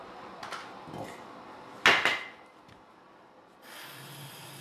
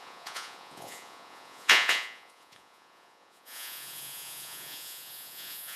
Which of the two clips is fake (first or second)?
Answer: second